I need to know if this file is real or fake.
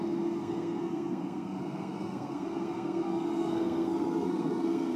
fake